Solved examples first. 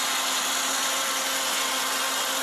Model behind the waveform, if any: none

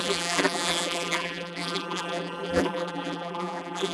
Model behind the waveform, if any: vocoder, BigVGAN v2